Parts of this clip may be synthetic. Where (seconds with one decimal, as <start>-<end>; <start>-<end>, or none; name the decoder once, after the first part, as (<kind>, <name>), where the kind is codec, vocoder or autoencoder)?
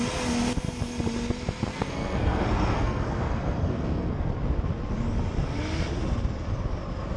1.7-4.3 (codec, SNAC)